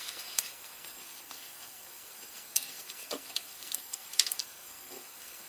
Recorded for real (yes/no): no